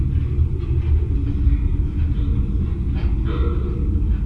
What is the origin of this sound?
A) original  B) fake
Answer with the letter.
A